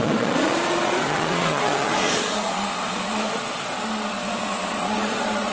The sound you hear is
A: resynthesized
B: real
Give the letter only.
A